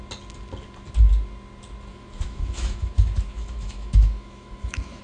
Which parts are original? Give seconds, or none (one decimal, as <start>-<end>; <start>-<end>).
0.0-1.9